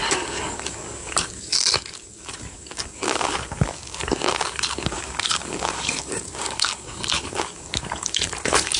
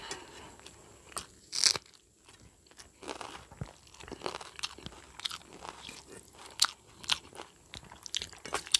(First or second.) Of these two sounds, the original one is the second